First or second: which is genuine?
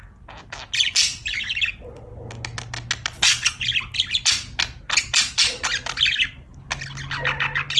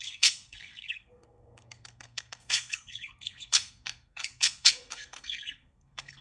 first